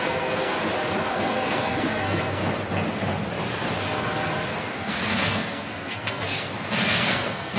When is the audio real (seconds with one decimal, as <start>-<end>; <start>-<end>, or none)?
0.5-1.1; 2.4-4.5